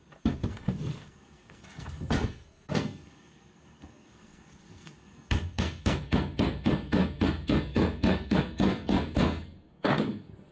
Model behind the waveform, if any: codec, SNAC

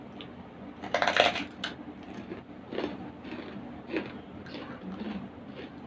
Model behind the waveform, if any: none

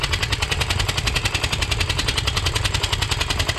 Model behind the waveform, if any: none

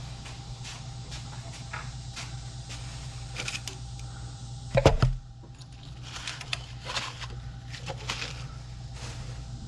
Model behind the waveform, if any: none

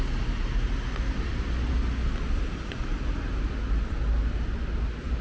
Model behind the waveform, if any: none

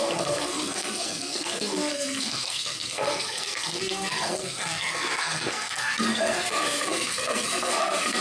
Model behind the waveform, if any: codec, SNAC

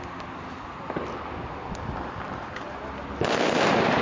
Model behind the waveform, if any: none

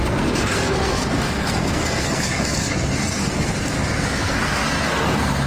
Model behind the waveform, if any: codec, SNAC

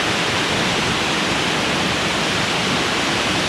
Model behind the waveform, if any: none